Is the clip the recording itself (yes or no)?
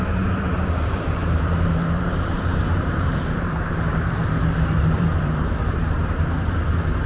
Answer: no